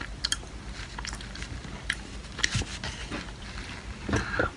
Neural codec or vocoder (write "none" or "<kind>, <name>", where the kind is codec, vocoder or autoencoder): vocoder, BigVGAN v2